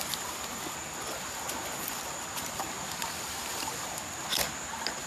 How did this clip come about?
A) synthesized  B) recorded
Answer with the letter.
B